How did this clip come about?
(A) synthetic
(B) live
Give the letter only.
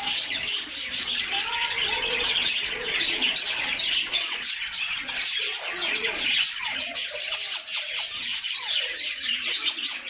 A